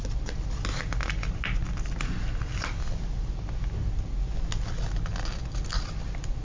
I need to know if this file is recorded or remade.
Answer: recorded